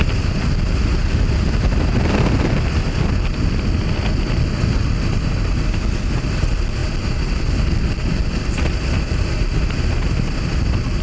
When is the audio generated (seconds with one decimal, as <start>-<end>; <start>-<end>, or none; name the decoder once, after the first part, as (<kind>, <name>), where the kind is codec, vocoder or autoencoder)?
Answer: none